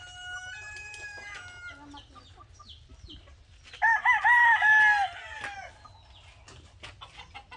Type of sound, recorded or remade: recorded